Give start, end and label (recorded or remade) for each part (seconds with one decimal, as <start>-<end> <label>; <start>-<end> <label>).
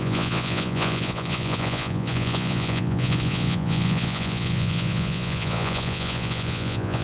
0.0-7.0 remade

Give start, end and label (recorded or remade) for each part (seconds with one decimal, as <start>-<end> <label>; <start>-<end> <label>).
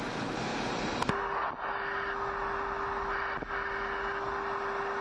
0.0-5.0 recorded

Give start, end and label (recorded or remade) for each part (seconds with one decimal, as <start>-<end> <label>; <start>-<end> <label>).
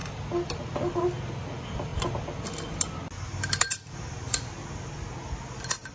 0.0-5.9 recorded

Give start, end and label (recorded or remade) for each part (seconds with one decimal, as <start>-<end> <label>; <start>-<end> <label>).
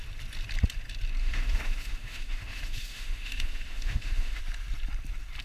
0.0-1.2 recorded; 1.2-4.4 remade; 4.4-5.4 recorded